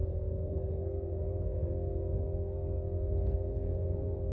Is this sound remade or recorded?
remade